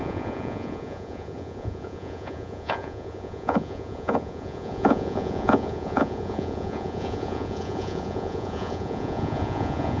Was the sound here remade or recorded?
remade